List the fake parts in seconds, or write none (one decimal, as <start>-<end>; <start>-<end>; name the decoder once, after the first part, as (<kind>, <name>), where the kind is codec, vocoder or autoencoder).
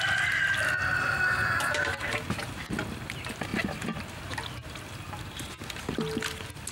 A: none